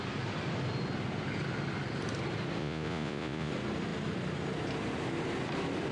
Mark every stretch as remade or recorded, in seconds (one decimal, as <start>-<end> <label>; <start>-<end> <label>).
0.0-2.6 recorded; 2.6-3.5 remade; 3.5-5.9 recorded